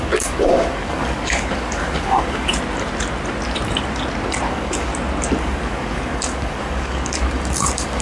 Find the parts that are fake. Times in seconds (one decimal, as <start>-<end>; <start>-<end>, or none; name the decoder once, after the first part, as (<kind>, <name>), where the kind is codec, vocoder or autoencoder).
0.0-2.5 (codec, DAC); 4.5-4.9; 5.4-8.0